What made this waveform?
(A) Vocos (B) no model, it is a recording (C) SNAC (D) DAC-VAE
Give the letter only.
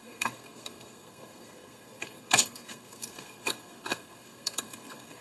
C